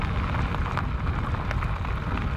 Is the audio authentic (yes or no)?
yes